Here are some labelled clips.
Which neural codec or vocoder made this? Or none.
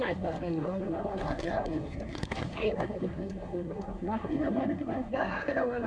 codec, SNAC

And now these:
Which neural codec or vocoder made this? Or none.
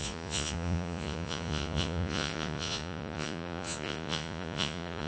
vocoder, Vocos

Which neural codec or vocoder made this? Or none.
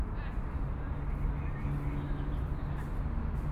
none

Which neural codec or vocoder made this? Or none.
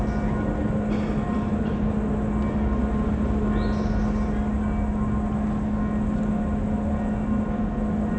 none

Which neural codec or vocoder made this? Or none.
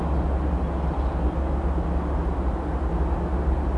none